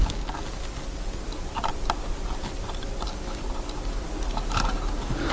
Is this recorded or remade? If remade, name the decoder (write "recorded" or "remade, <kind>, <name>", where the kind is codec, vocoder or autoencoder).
recorded